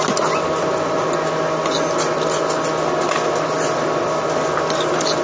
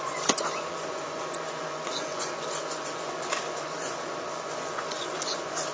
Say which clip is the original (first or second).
first